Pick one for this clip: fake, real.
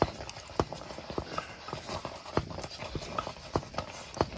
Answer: real